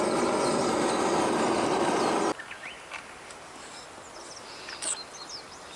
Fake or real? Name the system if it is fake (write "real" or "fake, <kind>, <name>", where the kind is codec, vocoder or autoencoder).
real